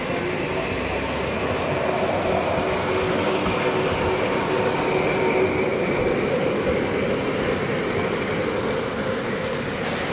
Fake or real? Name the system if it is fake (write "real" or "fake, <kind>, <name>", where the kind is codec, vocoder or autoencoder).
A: real